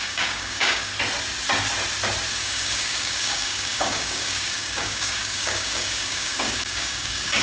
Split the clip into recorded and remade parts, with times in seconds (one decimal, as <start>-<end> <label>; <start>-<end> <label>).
0.0-0.9 remade; 0.9-2.3 recorded; 2.3-7.4 remade